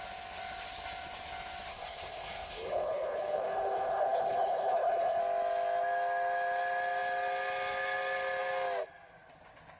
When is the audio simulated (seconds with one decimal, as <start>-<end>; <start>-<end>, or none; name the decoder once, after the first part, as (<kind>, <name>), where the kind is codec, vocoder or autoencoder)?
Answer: 1.7-5.2 (codec, HILCodec)